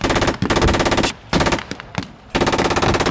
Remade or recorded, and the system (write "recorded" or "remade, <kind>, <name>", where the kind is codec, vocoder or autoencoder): recorded